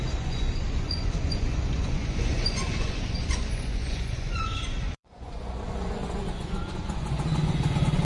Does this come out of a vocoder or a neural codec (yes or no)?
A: yes